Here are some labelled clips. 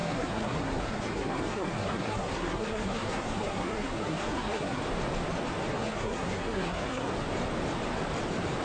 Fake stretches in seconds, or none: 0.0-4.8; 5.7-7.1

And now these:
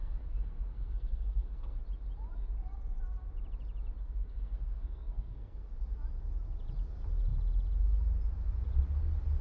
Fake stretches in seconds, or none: 0.0-1.8; 4.0-5.7

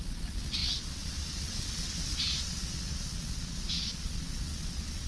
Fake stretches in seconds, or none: 0.0-5.1

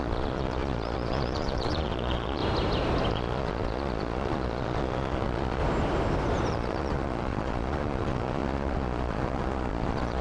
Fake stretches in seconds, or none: 0.0-2.4; 3.1-5.6; 6.5-10.2

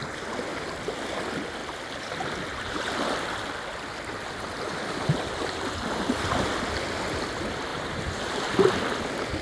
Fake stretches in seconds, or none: 7.7-8.4

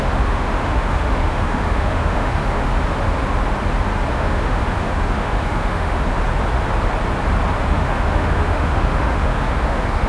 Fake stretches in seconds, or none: 0.0-2.7; 4.1-6.1; 7.6-10.1

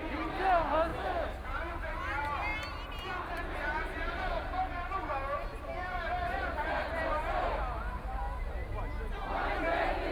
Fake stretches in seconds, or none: none